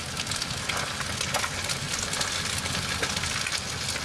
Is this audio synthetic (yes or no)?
no